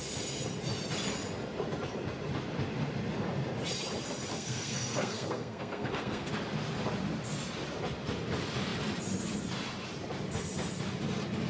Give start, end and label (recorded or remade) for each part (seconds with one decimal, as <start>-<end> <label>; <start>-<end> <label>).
0.0-4.3 recorded; 4.3-6.3 remade; 6.3-11.5 recorded